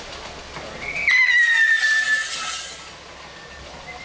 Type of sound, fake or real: real